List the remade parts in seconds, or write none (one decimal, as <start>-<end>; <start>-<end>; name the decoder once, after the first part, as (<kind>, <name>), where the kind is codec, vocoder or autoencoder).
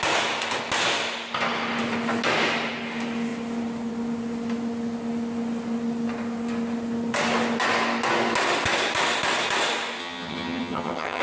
10.0-11.2 (vocoder, HiFi-GAN)